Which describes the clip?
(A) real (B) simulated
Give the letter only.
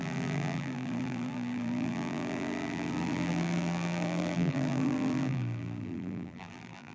B